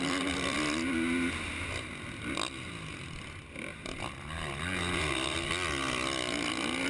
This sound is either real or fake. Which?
real